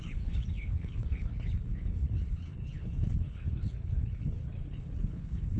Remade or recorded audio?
remade